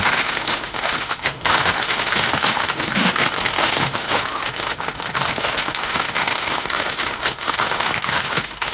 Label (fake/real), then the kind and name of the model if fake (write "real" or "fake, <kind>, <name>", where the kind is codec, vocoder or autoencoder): fake, autoencoder, DAC-VAE